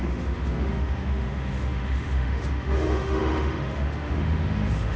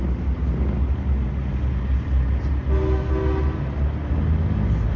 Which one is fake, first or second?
first